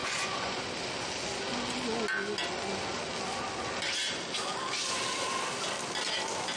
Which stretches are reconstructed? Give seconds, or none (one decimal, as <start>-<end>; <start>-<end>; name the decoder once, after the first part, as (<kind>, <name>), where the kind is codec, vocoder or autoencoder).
0.0-0.6 (vocoder, Vocos)